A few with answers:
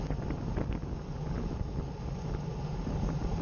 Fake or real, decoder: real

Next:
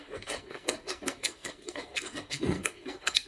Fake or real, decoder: fake, codec, SNAC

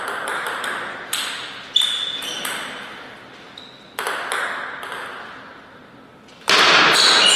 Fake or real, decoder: real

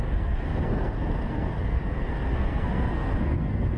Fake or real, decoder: fake, codec, SNAC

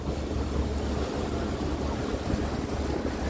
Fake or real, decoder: real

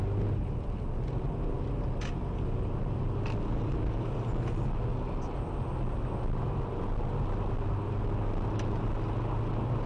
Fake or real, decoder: real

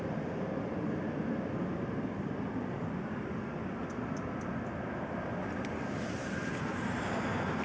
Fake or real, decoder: real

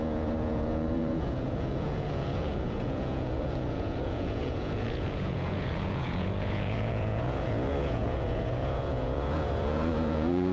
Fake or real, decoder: fake, vocoder, Vocos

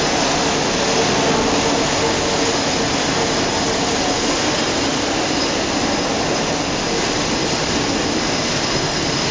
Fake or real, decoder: real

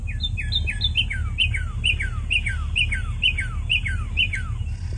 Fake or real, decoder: real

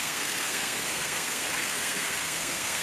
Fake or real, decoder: fake, codec, SNAC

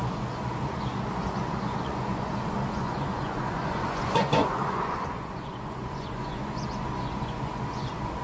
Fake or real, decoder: fake, vocoder, Vocos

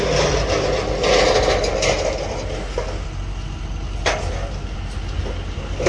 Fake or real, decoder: real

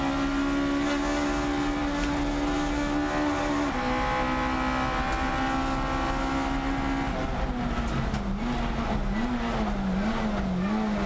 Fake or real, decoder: real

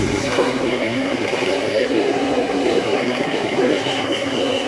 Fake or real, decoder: fake, codec, SNAC